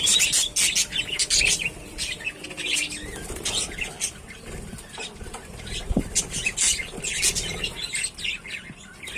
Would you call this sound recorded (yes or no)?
yes